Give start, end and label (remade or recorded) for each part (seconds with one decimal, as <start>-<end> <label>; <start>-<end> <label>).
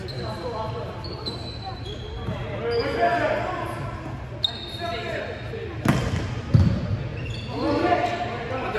0.0-8.8 recorded